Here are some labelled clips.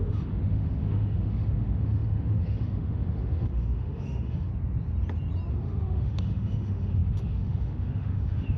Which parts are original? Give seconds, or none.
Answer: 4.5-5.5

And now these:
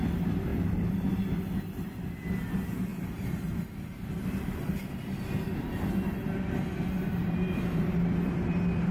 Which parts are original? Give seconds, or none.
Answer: 0.0-2.9; 5.2-7.2; 7.8-8.9